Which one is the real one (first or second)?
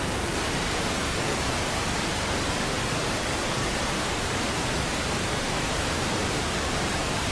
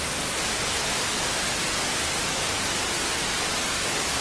second